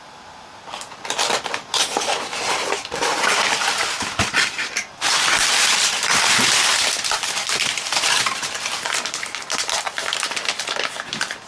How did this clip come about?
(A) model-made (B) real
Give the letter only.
A